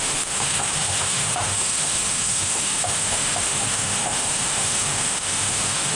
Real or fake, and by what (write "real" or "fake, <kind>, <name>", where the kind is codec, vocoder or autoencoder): fake, autoencoder, DAC-VAE